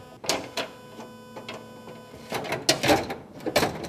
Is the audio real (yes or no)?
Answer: yes